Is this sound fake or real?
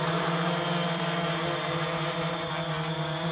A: fake